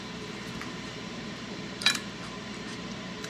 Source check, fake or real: fake